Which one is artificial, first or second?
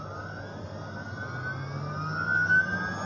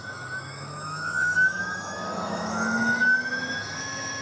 second